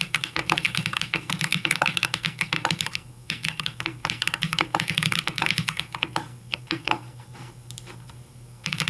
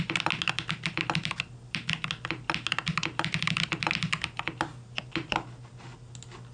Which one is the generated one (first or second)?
first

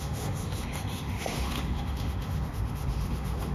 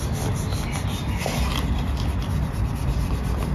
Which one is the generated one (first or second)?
first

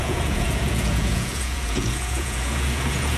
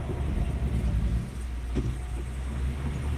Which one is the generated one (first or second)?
first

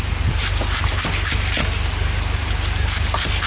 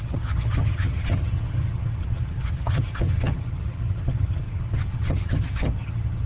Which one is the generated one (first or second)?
second